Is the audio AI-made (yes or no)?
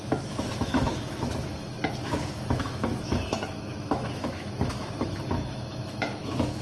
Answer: yes